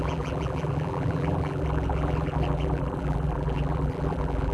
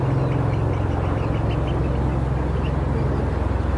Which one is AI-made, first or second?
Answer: first